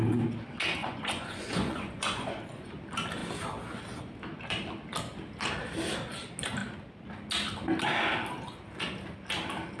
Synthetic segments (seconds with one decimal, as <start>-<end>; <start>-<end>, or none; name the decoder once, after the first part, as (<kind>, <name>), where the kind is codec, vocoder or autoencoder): 0.8-2.7 (vocoder, Vocos)